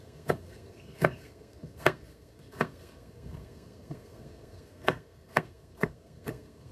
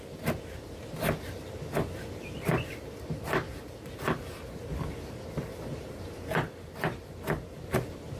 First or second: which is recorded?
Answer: second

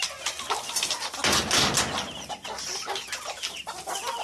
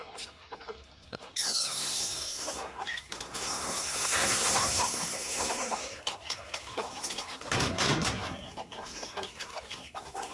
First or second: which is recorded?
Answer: first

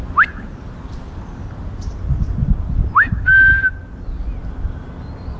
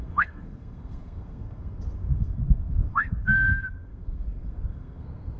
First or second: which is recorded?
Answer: first